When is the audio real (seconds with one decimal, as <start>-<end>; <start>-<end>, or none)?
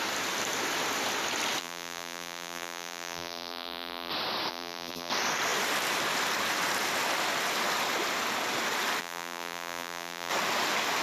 0.0-1.6; 4.1-4.5; 5.1-9.0; 10.3-11.0